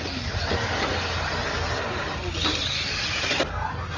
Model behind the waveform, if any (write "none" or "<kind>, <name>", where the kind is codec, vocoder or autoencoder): none